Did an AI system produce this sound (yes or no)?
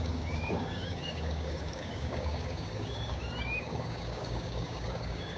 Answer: yes